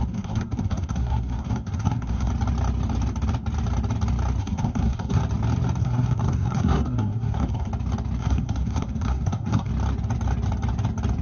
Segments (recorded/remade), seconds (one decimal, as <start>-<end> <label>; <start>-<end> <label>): 0.0-2.3 remade; 2.3-4.4 recorded; 4.4-5.2 remade; 5.2-5.8 recorded; 5.8-7.7 remade; 7.7-8.2 recorded; 8.2-9.7 remade; 9.7-11.2 recorded